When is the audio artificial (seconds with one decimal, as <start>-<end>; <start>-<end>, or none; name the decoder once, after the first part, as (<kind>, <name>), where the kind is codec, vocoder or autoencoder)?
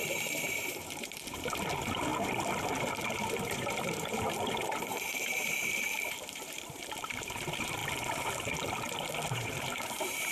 0.0-2.1 (vocoder, BigVGAN v2); 2.8-7.8; 9.3-10.3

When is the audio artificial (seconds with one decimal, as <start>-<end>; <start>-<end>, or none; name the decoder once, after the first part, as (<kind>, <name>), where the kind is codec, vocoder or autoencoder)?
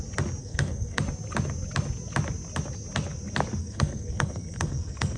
0.4-1.0 (codec, SNAC); 3.6-5.2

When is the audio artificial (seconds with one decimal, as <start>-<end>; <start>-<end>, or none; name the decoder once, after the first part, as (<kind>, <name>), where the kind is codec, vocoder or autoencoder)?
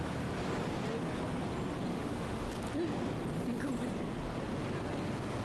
1.9-2.5 (autoencoder, DAC-VAE)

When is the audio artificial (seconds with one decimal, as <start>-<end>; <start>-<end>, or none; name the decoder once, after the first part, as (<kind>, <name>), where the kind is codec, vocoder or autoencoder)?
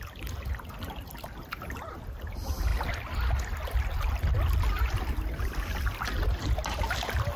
none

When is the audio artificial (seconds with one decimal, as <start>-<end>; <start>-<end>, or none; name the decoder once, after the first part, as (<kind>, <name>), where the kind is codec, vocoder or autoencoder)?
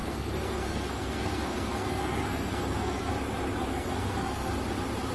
0.0-3.1 (codec, SNAC); 3.7-4.5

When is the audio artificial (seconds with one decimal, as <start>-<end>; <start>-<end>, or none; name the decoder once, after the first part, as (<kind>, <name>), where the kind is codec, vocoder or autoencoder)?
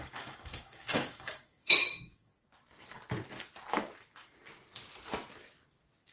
0.0-2.3 (codec, DAC)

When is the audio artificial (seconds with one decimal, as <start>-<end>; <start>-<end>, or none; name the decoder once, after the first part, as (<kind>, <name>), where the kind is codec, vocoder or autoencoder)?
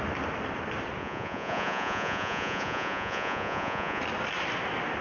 1.0-4.0 (vocoder, Vocos)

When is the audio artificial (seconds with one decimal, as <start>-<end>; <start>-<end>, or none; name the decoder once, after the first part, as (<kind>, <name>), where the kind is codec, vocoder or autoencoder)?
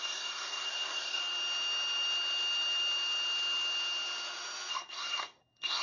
0.0-1.2 (codec, SNAC); 4.7-5.8